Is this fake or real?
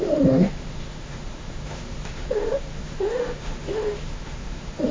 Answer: fake